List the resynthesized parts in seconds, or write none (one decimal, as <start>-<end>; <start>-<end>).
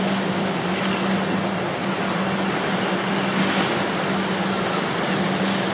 none